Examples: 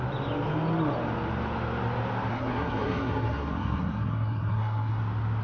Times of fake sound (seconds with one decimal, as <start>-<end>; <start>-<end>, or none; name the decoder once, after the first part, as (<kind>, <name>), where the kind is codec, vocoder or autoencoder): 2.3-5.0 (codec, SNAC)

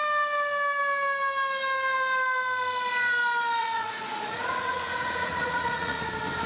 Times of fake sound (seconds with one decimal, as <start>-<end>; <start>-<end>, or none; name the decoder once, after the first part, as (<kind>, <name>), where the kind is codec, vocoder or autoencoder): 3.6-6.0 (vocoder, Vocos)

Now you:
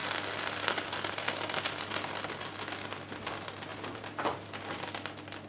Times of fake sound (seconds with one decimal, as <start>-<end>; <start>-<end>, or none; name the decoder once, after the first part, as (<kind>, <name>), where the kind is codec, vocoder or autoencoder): 3.7-4.5 (vocoder, BigVGAN v2)

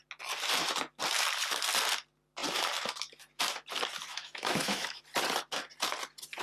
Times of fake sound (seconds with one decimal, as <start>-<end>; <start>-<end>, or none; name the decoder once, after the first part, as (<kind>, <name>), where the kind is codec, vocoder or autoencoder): 4.1-5.0 (autoencoder, DAC-VAE)

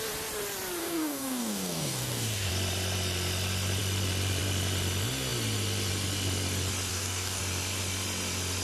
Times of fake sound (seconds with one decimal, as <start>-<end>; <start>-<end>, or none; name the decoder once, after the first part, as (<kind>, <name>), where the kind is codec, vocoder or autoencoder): 0.8-2.5 (codec, DAC); 6.9-7.4

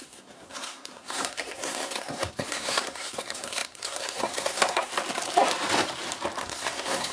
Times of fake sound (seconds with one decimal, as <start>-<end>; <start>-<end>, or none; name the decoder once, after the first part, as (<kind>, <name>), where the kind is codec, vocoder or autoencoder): 0.0-4.9 (codec, SNAC); 6.4-7.1

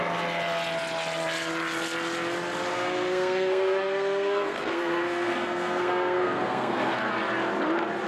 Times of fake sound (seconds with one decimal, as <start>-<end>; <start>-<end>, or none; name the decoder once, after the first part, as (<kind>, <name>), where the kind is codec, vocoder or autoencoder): 2.7-7.1 (codec, SNAC)

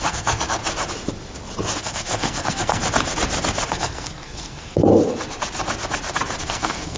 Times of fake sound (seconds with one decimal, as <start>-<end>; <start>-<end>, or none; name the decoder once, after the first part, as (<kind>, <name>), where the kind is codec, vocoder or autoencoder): 0.0-0.6 (codec, SNAC); 1.8-2.8; 3.7-4.9; 6.4-7.0